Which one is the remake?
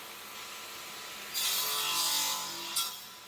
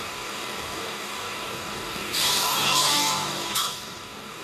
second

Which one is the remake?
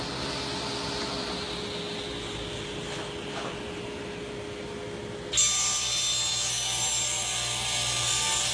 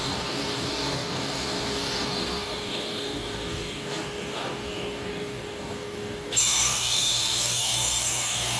second